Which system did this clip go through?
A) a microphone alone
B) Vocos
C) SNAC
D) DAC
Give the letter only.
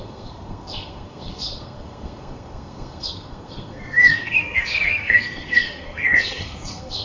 C